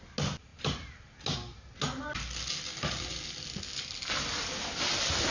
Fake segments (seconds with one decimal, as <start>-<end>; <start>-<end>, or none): none